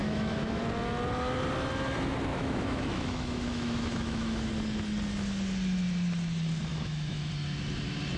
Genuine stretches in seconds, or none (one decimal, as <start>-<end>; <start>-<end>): 0.6-2.3; 4.5-6.7; 7.3-8.2